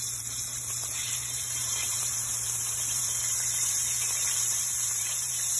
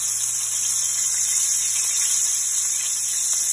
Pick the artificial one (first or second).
first